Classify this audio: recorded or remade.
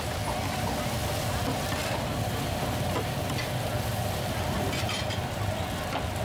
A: recorded